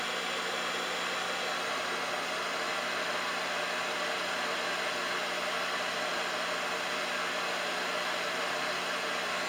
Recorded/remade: recorded